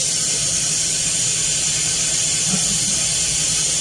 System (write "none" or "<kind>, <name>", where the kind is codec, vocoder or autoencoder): none